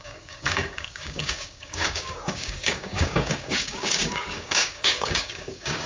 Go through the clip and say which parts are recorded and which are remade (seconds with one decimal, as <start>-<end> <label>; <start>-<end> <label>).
0.0-5.9 remade